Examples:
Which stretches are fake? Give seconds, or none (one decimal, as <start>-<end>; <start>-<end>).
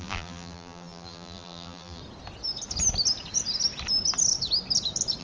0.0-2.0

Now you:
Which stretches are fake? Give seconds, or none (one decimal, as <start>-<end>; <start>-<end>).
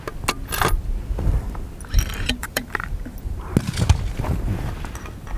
2.4-2.9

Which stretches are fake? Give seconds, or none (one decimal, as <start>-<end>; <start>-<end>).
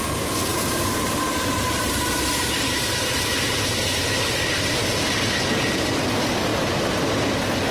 0.5-5.1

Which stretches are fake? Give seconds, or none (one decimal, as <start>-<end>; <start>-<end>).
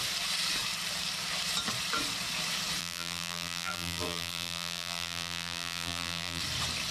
2.8-6.4